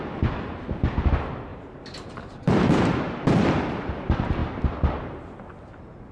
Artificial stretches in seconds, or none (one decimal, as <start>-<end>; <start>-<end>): 1.5-3.9